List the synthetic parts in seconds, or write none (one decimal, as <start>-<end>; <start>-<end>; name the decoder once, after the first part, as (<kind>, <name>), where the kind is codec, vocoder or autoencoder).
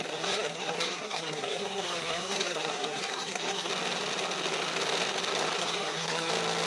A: 0.0-3.7 (codec, SNAC); 5.6-6.3